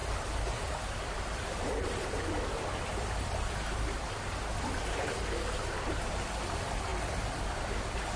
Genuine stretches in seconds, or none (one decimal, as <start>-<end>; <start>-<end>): 4.1-6.9

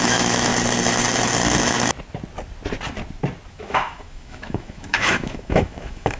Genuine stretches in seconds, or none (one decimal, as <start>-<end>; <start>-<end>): 0.5-3.5

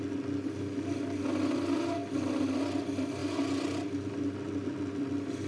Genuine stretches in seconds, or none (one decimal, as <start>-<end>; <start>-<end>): 0.0-5.5